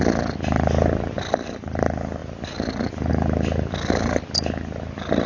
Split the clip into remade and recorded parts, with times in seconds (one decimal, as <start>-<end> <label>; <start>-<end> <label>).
0.0-5.3 recorded